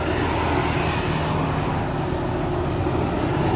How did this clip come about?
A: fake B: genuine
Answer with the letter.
B